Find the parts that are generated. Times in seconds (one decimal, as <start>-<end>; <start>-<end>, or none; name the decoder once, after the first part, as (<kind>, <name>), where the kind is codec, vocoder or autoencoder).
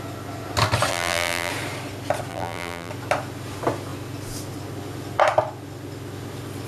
0.9-1.5 (vocoder, BigVGAN v2); 2.3-2.9